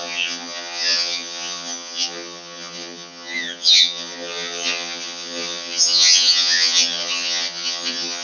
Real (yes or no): no